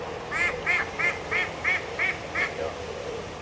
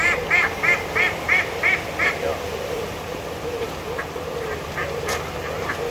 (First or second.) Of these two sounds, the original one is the first